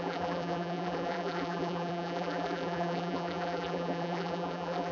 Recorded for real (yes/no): no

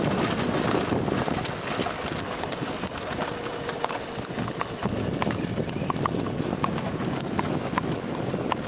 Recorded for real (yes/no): yes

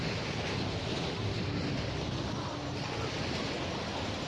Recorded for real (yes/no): yes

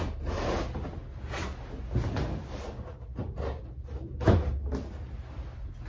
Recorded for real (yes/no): yes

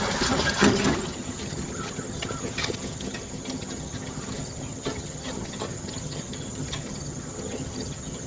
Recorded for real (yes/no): no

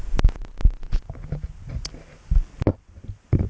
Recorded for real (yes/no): yes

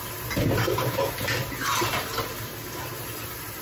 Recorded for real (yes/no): yes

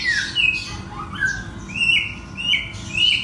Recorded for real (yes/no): yes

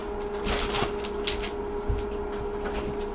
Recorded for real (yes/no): yes